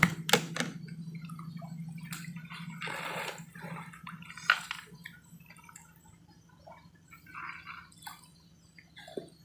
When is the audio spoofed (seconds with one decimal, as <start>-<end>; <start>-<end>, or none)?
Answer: none